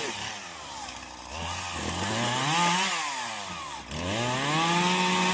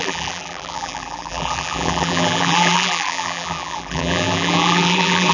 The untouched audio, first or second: first